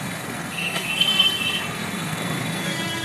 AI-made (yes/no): yes